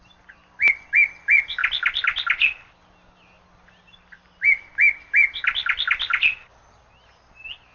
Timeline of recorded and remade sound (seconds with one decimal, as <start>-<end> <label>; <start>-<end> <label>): 0.0-7.7 recorded